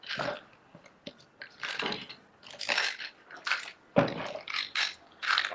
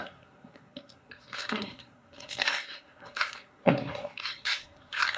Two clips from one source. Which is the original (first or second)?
first